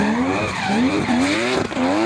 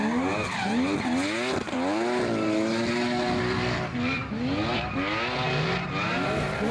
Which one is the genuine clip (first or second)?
second